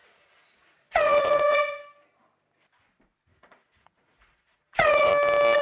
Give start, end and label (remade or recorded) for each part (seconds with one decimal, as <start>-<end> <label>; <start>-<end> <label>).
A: 0.0-1.8 remade; 1.8-3.3 recorded; 3.3-5.1 remade; 5.1-5.6 recorded